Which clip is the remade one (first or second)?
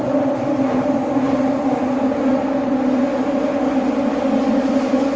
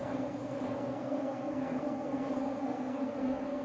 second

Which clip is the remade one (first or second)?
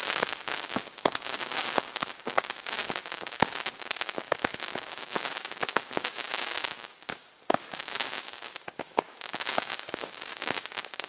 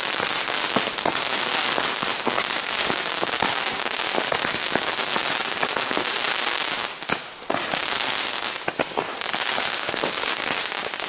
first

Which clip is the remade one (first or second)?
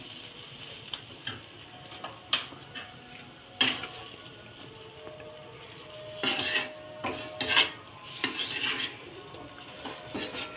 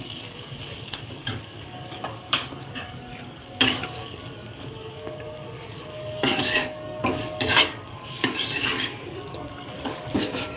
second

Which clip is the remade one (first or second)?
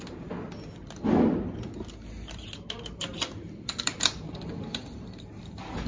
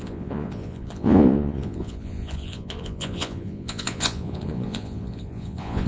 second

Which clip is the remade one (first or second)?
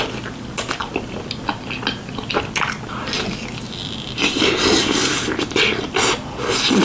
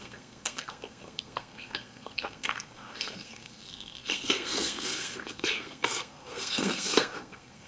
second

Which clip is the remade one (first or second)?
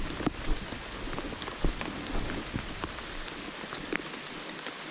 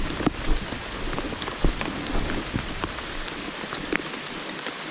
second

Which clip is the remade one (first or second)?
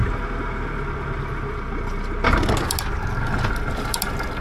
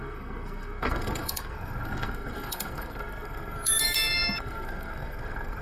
second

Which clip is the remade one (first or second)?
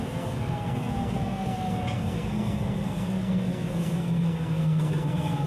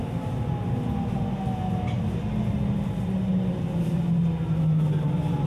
first